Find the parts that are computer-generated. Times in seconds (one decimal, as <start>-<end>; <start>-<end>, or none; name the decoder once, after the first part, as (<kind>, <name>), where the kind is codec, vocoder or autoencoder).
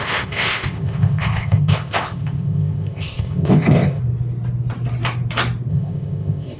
0.0-4.0 (codec, ZipCodec); 5.7-6.6